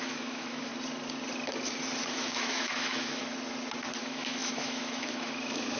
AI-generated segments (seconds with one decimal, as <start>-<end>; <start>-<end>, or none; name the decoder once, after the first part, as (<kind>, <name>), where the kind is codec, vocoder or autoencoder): 0.0-0.7 (autoencoder, DAC-VAE); 2.1-3.2; 4.0-5.8